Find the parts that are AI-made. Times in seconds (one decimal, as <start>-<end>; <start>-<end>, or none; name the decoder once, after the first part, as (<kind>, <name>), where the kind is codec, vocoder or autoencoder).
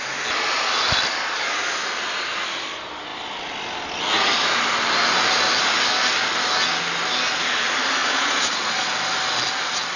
8.0-8.9 (vocoder, Vocos)